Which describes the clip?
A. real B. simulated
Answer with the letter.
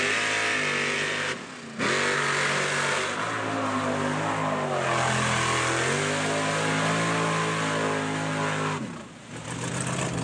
A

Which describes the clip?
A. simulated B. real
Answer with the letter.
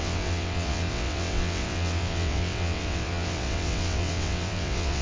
A